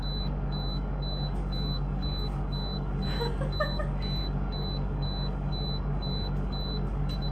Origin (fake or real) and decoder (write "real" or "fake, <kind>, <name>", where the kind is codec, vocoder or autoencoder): fake, codec, DAC